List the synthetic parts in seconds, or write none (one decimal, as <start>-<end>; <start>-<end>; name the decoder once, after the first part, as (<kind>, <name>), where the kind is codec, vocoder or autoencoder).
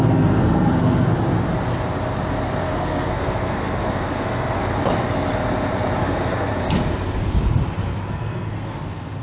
0.0-1.1 (codec, SNAC); 2.6-4.6; 6.0-6.5; 8.1-9.2